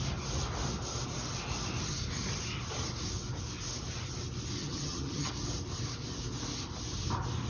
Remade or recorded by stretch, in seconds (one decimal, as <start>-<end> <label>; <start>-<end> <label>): 0.0-4.6 recorded; 4.6-5.3 remade; 5.3-7.5 recorded